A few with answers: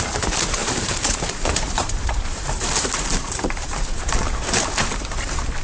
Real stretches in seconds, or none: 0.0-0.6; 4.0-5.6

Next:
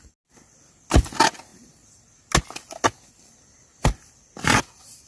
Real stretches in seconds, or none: 0.0-5.1